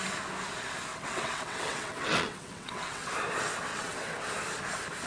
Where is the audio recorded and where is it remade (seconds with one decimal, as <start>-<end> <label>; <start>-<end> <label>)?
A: 0.0-0.9 recorded; 0.9-3.1 remade; 3.1-3.7 recorded; 3.7-4.3 remade; 4.3-5.1 recorded